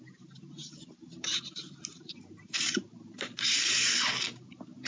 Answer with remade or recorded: remade